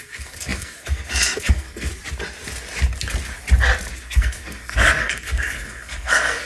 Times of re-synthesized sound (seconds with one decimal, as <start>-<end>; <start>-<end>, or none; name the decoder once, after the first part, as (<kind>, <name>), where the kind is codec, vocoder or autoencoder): 0.0-1.9 (codec, SNAC); 4.0-6.5

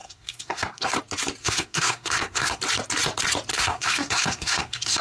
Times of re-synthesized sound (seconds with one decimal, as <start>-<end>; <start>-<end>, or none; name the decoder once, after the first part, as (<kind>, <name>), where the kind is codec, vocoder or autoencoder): 0.0-1.0 (codec, SNAC); 1.4-2.6; 3.5-5.0

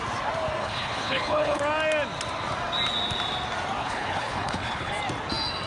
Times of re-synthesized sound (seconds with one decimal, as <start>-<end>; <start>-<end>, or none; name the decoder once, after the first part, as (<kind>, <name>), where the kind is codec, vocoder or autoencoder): 0.6-1.6 (codec, HILCodec); 3.8-4.9

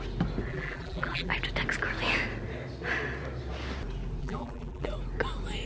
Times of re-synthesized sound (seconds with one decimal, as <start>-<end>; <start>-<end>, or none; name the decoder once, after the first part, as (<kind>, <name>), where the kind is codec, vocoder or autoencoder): 0.5-1.3 (vocoder, BigVGAN v2); 4.2-4.9

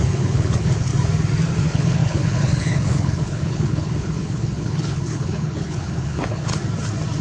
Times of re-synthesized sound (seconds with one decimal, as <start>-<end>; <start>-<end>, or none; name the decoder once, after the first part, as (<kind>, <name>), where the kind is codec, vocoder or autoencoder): 0.0-0.9 (codec, HILCodec); 1.6-6.5